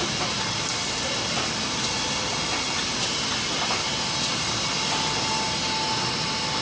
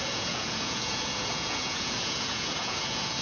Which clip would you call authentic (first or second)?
first